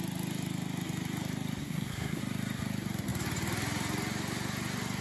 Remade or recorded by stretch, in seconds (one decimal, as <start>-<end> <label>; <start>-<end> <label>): 0.0-1.6 recorded; 1.6-2.2 remade; 2.2-5.0 recorded

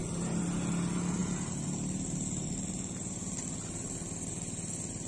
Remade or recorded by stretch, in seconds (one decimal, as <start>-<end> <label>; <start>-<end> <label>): 0.0-5.1 recorded

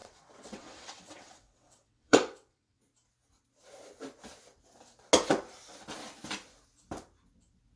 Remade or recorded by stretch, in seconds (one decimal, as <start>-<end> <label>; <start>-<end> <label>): 0.0-2.8 remade; 2.8-7.8 recorded

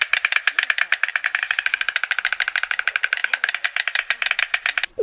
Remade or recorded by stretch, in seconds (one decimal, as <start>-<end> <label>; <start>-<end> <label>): 0.0-1.1 recorded; 1.1-2.2 remade; 2.2-3.2 recorded; 3.2-4.3 remade; 4.3-5.0 recorded

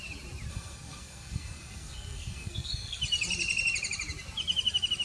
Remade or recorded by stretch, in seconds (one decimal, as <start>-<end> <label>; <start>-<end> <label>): 0.0-0.5 recorded; 0.5-3.0 remade; 3.0-5.0 recorded